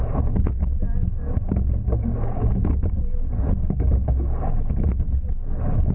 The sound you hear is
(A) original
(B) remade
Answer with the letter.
A